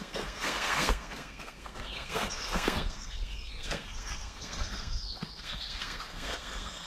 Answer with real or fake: fake